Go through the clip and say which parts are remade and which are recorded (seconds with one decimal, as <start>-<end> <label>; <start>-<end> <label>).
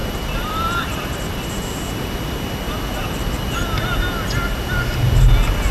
0.0-1.4 remade; 1.4-5.7 recorded